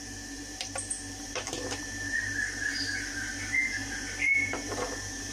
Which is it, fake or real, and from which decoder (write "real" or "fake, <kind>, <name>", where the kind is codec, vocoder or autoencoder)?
fake, vocoder, BigVGAN v2